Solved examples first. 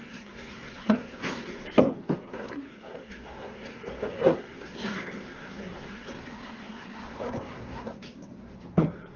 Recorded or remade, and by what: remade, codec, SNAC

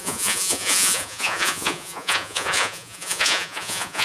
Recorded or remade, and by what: remade, vocoder, Vocos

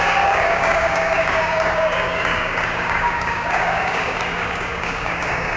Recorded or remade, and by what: remade, codec, DAC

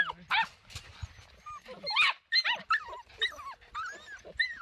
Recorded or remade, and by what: recorded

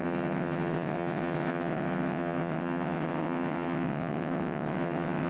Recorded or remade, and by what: remade, vocoder, WaveNeXt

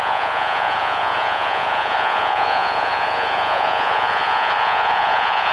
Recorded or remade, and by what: remade, vocoder, Vocos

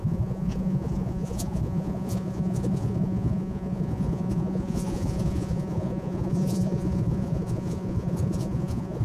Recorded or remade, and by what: remade, vocoder, Vocos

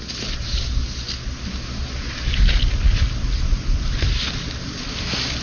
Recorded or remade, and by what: recorded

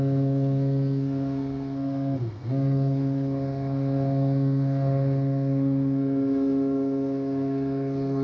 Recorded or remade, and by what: remade, codec, SNAC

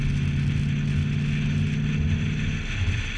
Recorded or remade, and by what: recorded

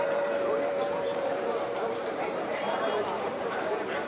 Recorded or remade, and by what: remade, vocoder, BigVGAN v2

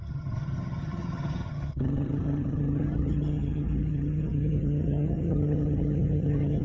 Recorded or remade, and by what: remade, vocoder, HiFi-GAN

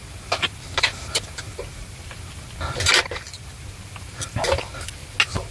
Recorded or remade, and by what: recorded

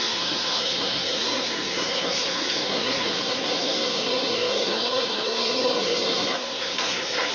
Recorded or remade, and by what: remade, codec, SNAC